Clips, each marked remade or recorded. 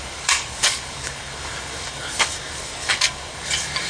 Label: remade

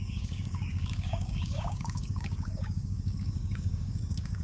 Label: remade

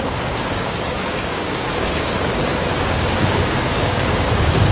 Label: remade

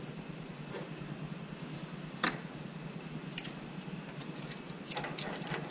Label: recorded